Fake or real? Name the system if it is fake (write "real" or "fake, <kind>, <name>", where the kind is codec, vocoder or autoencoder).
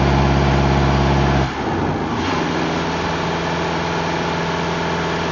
real